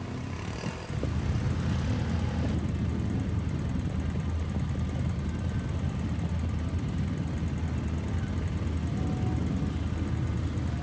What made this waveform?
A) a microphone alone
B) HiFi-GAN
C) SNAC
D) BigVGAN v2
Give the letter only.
A